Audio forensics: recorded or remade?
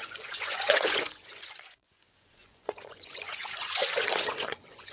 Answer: remade